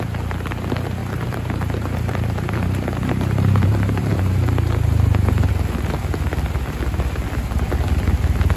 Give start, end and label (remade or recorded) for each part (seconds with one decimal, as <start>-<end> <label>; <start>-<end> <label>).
0.0-1.0 recorded; 1.0-5.5 remade; 5.5-8.6 recorded